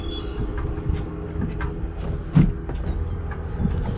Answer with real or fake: real